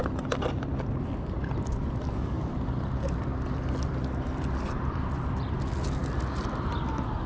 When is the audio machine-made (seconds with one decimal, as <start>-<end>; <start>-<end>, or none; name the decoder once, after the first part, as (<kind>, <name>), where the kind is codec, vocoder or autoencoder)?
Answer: none